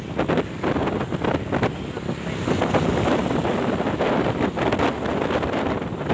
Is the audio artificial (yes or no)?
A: no